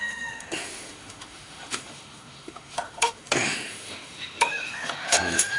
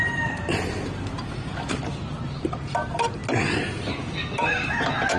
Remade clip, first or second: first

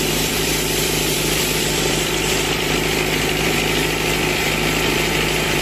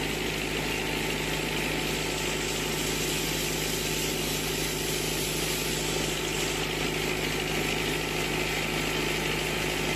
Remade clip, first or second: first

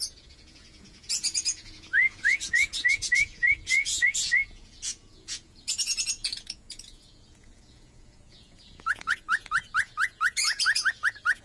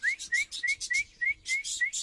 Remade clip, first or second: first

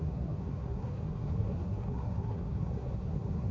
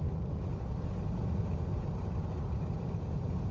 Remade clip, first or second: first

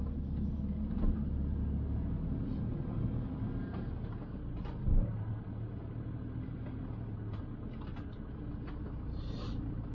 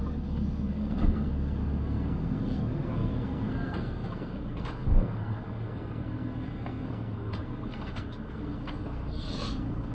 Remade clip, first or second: second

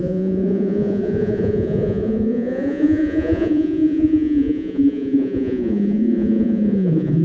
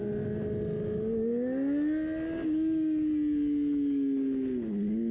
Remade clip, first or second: first